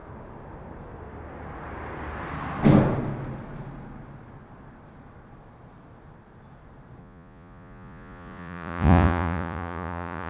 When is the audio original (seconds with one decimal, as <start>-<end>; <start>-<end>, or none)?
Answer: 0.0-7.0